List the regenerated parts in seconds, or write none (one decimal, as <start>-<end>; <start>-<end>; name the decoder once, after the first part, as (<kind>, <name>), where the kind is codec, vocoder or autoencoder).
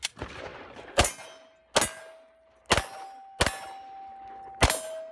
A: 0.5-1.1 (vocoder, BigVGAN v2)